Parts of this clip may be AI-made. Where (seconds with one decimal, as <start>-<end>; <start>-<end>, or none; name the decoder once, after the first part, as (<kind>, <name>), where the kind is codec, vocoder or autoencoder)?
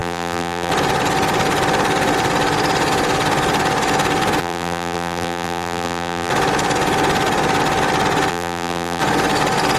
0.0-0.7 (vocoder, BigVGAN v2); 4.4-6.3; 8.3-9.0